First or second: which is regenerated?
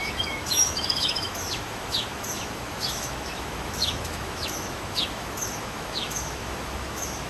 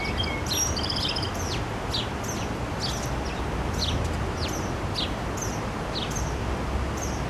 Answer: first